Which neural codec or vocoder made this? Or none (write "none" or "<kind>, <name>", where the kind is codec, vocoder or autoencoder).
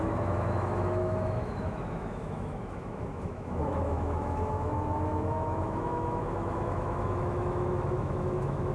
autoencoder, DAC-VAE